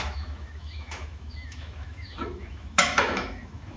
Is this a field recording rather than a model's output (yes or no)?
no